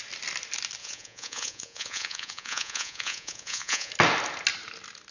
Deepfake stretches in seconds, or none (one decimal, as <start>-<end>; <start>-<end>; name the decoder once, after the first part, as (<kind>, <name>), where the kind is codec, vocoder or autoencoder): 0.8-3.9 (vocoder, Vocos)